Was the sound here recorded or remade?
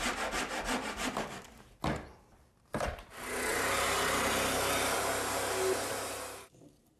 recorded